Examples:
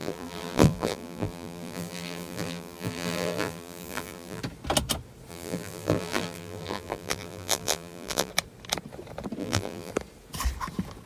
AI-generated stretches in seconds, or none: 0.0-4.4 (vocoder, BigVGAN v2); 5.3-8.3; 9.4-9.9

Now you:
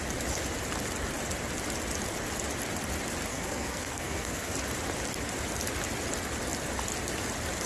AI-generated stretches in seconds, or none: 3.3-4.5 (codec, SNAC)

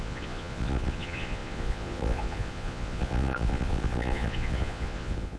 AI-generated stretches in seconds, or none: 0.0-5.4 (vocoder, Vocos)

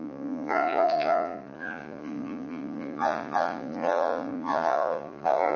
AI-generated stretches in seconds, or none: 0.0-5.6 (vocoder, Vocos)

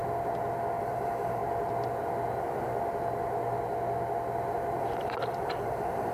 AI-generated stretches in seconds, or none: 0.8-1.4 (vocoder, BigVGAN v2); 4.8-6.1

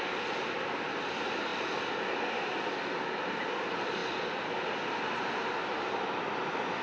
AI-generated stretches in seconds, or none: 1.5-2.2 (vocoder, BigVGAN v2)

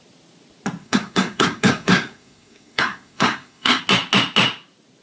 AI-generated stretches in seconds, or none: 0.8-3.8 (codec, SNAC)